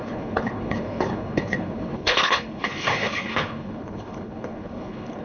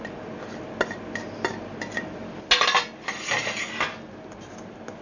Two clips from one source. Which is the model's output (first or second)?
first